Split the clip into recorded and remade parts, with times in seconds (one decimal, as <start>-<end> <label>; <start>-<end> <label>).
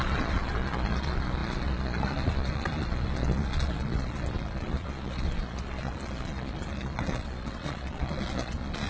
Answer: 0.0-8.9 remade